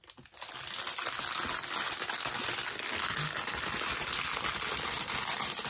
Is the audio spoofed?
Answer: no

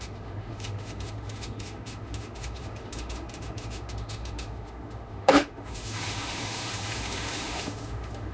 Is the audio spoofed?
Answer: yes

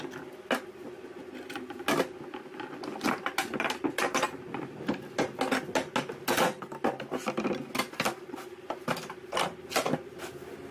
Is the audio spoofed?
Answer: no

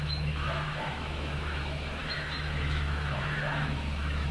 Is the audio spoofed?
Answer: yes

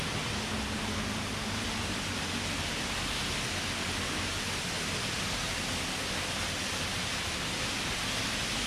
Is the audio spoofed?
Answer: no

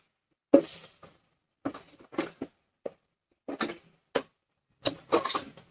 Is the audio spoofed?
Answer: no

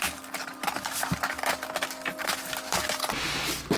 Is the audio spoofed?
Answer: no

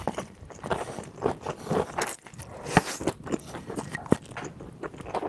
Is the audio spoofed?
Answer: yes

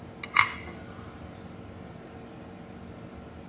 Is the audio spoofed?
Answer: no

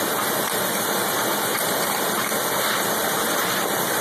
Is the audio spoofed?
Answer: yes